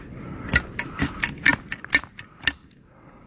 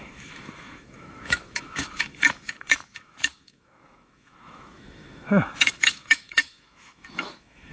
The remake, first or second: second